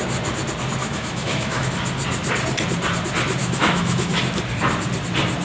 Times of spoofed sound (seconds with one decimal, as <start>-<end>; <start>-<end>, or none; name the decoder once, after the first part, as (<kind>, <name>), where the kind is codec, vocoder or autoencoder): 0.8-1.7 (autoencoder, DAC-VAE); 3.4-4.2